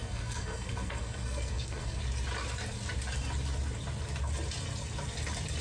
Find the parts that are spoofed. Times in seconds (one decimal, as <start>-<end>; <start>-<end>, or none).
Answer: 0.0-2.0

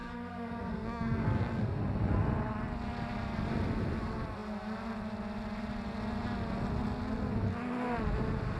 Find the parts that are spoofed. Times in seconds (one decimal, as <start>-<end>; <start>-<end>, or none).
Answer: 0.0-1.8

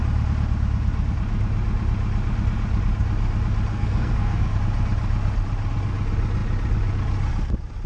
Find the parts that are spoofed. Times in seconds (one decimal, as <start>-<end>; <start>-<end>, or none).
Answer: 3.7-4.5

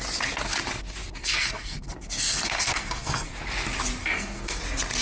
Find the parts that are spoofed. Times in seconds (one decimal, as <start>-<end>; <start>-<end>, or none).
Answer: 1.2-3.3; 4.0-4.6

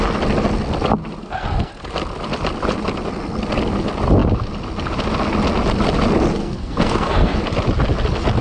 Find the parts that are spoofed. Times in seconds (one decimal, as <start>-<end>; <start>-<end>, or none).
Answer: 1.2-1.7; 6.4-7.4

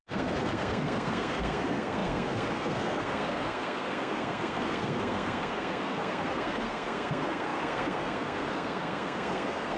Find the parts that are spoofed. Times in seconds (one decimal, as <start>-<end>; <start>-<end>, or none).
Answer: 0.0-9.8

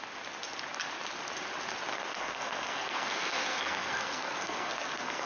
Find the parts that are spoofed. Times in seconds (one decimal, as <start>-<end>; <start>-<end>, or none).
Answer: 1.9-5.3